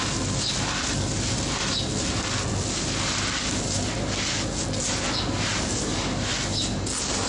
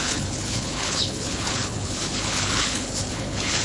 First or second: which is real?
first